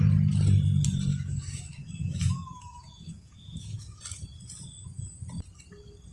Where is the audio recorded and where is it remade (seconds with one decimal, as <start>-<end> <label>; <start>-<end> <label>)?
0.0-1.1 recorded; 1.1-4.0 remade; 4.0-6.1 recorded